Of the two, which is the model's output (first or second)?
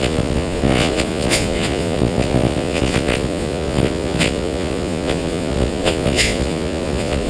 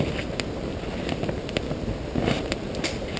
first